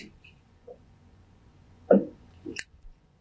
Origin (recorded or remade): remade